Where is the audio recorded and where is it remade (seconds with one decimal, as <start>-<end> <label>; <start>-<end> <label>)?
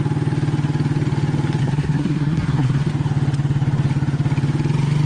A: 0.0-1.6 recorded; 1.6-2.9 remade; 2.9-5.1 recorded